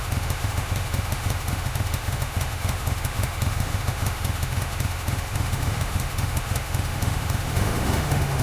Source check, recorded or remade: remade